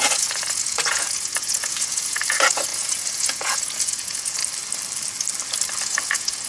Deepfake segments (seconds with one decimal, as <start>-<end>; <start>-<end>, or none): 0.0-4.4; 5.8-6.5